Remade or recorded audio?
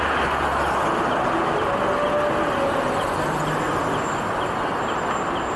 recorded